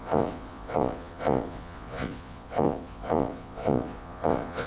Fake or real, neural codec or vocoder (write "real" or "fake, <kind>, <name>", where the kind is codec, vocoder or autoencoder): fake, vocoder, Vocos